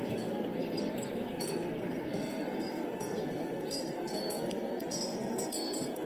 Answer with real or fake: fake